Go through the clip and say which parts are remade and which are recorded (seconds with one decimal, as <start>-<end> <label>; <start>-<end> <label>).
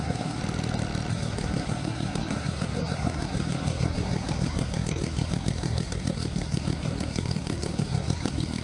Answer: 0.0-0.4 remade; 0.4-1.1 recorded; 1.1-8.6 remade